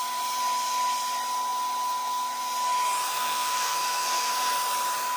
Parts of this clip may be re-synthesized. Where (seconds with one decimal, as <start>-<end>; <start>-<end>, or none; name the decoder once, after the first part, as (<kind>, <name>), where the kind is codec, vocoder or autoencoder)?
3.1-4.3 (codec, SNAC)